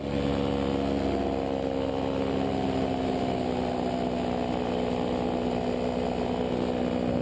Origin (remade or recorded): recorded